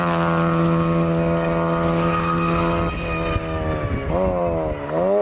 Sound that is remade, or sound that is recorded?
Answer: recorded